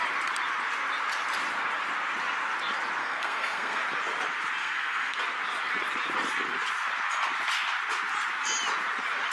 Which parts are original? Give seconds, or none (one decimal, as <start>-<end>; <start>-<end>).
0.0-3.0; 3.8-4.6; 5.2-9.3